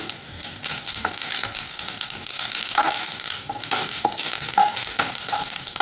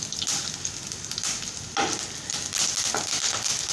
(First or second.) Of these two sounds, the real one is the second